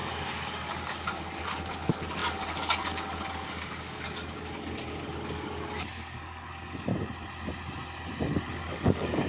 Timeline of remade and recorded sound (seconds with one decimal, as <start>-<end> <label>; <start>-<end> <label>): 0.0-6.9 remade; 6.9-8.5 recorded; 8.5-9.3 remade